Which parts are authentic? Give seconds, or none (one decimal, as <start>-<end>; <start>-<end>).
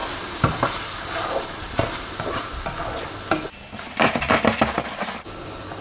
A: 2.8-5.8